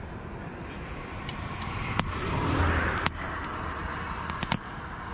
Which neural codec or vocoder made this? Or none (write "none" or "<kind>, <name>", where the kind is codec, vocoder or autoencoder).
vocoder, BigVGAN v2